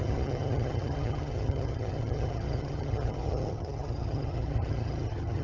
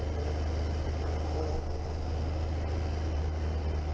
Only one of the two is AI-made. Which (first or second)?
first